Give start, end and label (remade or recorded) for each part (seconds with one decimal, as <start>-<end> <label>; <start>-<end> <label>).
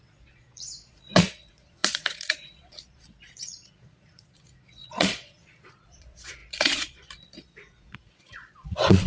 0.0-9.1 remade